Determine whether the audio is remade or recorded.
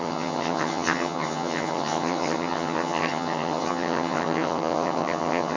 remade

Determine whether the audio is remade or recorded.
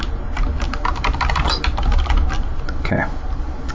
recorded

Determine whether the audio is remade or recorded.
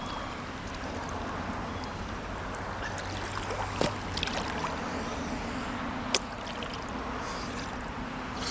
recorded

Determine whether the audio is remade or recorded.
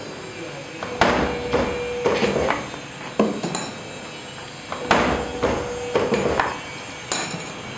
recorded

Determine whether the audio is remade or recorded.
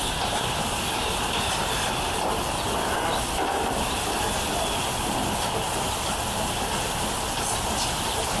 recorded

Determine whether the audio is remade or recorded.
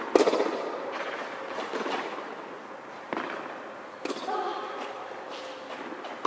recorded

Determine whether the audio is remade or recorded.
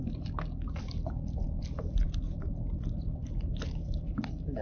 recorded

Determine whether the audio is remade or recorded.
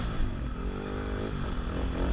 recorded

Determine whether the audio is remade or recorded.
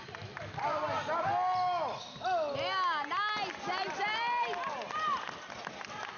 recorded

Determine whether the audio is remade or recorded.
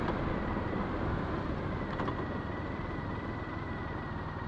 recorded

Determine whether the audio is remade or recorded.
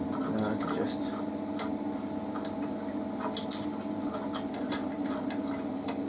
recorded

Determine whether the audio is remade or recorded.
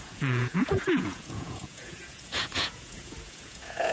remade